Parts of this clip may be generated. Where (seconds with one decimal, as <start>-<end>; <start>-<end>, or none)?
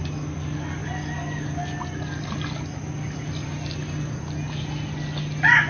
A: none